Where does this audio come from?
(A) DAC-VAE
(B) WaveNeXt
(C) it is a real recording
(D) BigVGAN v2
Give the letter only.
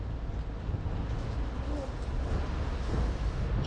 C